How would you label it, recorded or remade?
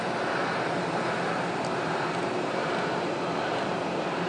remade